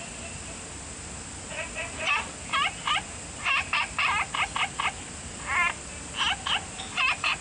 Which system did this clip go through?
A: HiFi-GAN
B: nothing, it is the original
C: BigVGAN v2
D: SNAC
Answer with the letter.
B